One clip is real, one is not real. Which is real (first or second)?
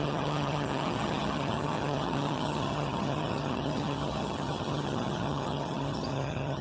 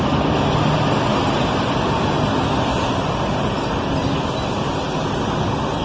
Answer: second